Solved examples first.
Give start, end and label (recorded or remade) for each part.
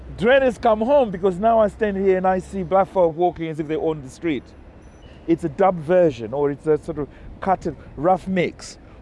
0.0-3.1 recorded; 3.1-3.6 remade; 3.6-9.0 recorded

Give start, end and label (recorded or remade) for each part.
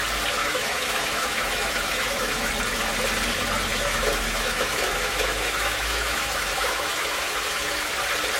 0.0-0.4 recorded; 0.4-2.5 remade; 2.5-3.7 recorded; 3.7-7.9 remade; 7.9-8.4 recorded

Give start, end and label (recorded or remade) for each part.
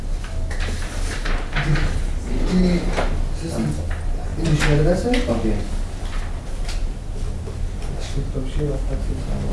0.0-9.5 recorded